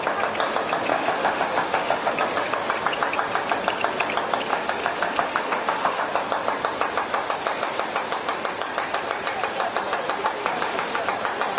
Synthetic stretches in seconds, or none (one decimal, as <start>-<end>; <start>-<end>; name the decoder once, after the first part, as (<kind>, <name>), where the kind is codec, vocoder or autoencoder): 0.9-2.1 (autoencoder, DAC-VAE); 4.5-6.0; 10.4-11.0